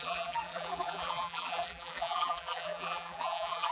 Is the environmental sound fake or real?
fake